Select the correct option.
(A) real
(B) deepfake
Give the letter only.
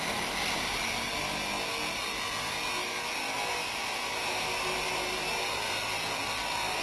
A